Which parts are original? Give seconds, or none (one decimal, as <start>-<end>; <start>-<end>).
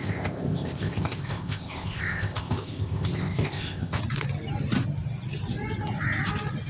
4.0-6.7